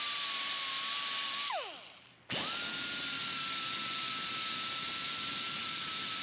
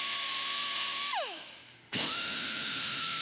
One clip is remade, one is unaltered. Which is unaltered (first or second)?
first